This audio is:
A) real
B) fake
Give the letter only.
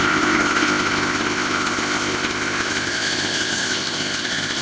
B